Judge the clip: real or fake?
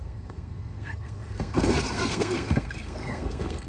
fake